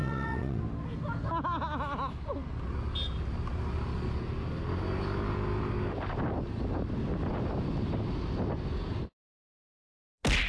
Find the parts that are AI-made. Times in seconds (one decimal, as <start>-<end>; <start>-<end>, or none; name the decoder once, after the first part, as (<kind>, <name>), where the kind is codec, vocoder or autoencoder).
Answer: 0.0-0.6 (vocoder, WaveNeXt)